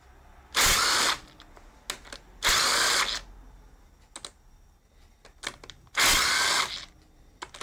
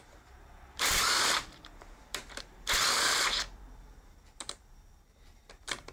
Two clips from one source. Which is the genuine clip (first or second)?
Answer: first